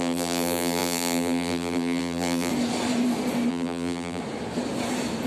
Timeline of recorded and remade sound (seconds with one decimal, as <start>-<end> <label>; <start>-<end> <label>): 0.0-2.5 remade; 2.5-3.5 recorded; 3.5-4.2 remade; 4.2-5.3 recorded